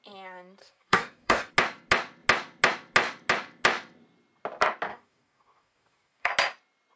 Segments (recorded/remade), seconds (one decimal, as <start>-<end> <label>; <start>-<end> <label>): 0.0-0.6 recorded; 0.6-1.5 remade; 1.5-4.9 recorded; 4.9-6.3 remade; 6.3-7.0 recorded